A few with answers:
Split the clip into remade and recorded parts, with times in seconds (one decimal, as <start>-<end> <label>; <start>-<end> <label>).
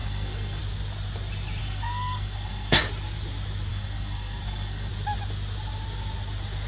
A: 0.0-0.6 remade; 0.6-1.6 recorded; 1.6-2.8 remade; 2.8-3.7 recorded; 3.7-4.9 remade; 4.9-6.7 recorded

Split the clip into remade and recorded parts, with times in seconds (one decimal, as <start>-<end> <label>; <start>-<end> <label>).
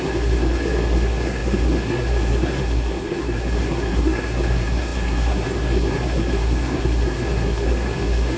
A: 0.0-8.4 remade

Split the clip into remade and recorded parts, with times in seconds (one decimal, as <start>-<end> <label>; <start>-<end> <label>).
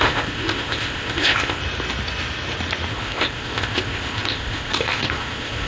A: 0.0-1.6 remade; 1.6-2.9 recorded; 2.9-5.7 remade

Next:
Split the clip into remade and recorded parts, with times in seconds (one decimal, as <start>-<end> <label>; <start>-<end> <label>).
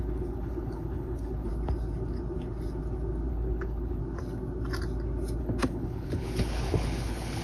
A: 0.0-1.5 remade; 1.5-3.3 recorded; 3.3-4.0 remade; 4.0-5.4 recorded; 5.4-7.4 remade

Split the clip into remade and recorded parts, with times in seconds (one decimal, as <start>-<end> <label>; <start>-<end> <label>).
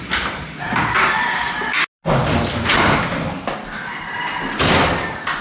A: 0.0-5.4 recorded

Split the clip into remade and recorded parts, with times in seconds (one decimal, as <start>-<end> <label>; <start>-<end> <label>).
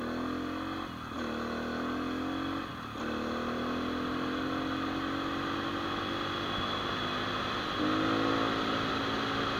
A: 0.0-9.6 recorded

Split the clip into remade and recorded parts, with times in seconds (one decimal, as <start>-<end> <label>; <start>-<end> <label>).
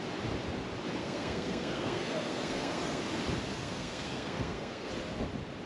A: 0.0-1.0 recorded; 1.0-3.0 remade; 3.0-3.5 recorded; 3.5-4.9 remade; 4.9-5.7 recorded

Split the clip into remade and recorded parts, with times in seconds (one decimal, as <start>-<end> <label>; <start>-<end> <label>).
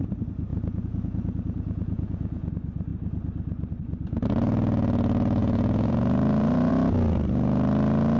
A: 0.0-0.5 recorded; 0.5-2.5 remade; 2.5-5.4 recorded; 5.4-6.7 remade; 6.7-8.2 recorded